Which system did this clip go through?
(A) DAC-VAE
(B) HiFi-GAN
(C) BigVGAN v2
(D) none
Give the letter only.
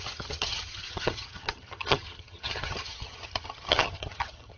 B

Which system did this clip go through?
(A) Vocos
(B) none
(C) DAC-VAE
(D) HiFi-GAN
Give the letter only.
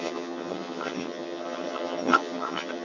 D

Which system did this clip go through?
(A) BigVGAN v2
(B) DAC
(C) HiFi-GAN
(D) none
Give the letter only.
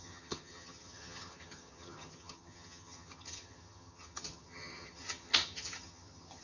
C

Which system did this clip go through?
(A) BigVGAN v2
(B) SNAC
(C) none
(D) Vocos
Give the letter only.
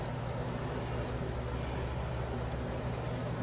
C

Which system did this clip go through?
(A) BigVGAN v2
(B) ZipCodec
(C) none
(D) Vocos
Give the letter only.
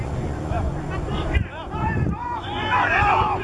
D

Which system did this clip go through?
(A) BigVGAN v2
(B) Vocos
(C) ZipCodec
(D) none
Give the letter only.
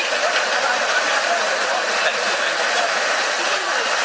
D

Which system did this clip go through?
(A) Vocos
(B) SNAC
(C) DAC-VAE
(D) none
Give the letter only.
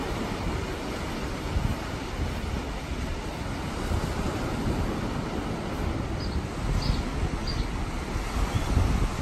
D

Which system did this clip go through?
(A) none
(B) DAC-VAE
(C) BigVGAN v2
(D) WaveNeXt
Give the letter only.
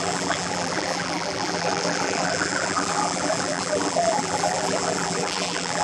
C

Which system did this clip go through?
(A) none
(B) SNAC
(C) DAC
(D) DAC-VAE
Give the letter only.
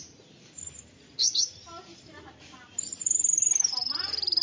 A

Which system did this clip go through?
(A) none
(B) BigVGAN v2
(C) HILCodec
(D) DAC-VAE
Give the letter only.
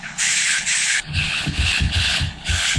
C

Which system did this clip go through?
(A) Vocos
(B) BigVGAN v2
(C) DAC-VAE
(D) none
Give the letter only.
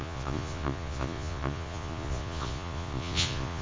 A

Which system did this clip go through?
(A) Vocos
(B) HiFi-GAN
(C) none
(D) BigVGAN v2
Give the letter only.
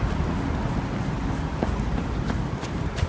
C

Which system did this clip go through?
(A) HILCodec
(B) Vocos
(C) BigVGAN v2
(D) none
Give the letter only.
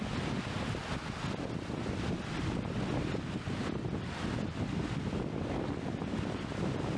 D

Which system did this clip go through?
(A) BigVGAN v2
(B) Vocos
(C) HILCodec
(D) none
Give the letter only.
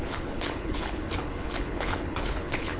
C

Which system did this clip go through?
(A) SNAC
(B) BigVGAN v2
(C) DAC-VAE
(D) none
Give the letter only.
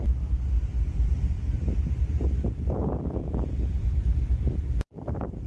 B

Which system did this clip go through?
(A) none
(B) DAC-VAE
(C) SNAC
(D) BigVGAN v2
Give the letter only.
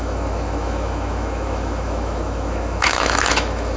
B